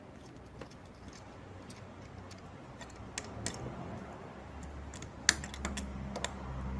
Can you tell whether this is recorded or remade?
recorded